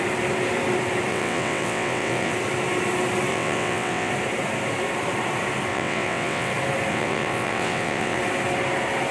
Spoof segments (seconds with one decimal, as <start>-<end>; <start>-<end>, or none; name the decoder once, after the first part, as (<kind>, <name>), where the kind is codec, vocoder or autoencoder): 1.1-2.3 (vocoder, WaveNeXt); 3.3-4.1; 5.7-6.5; 6.9-8.2